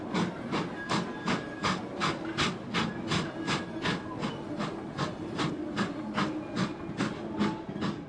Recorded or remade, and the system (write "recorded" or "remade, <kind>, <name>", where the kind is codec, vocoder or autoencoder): recorded